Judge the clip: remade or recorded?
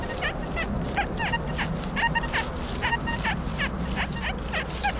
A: recorded